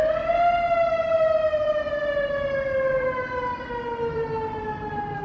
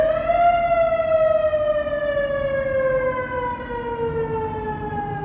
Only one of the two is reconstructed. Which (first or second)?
first